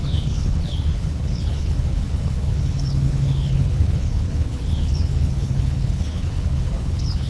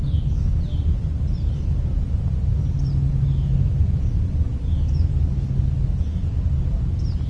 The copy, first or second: first